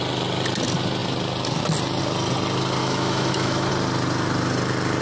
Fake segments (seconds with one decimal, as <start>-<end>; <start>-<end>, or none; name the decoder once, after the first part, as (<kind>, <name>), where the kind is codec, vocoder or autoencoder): 2.8-3.7 (autoencoder, DAC-VAE)